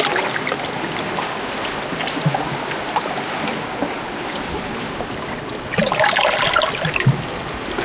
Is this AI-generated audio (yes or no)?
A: no